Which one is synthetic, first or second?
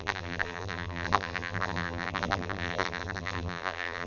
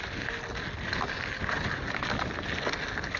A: first